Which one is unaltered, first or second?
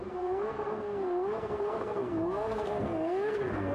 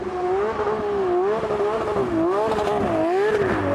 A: second